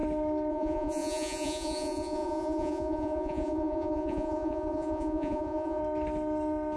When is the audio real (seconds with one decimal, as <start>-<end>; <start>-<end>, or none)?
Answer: 0.0-0.5; 5.8-6.8